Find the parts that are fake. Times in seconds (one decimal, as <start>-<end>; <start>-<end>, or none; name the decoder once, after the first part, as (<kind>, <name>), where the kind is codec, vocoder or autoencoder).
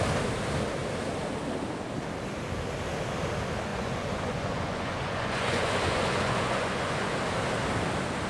3.7-7.1 (vocoder, Vocos)